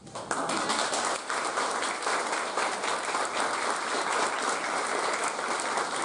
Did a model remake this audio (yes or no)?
no